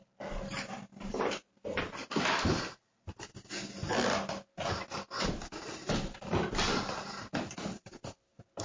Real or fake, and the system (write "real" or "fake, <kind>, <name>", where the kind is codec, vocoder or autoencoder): real